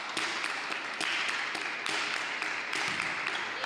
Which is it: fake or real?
real